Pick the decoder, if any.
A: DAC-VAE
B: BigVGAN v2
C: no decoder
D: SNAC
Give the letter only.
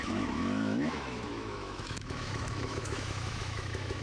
A